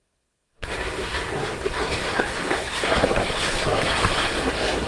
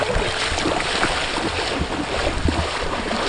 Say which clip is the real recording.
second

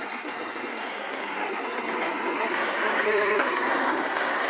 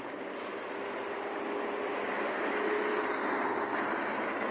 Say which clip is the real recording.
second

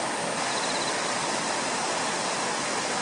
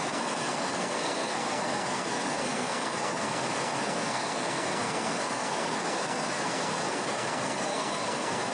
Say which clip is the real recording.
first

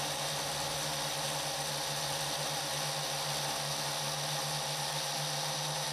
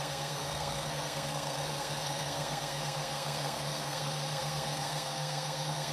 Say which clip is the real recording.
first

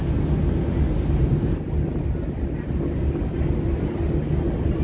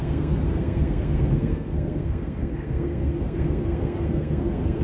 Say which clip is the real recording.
first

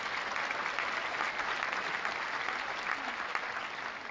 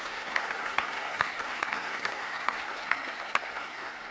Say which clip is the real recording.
first